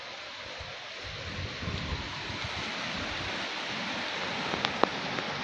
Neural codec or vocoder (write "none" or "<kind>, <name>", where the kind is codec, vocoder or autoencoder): none